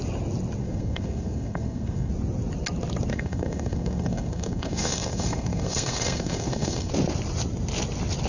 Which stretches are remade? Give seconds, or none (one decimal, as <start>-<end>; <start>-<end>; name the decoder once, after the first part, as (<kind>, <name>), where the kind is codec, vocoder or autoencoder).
0.6-2.1 (codec, SNAC); 3.1-6.9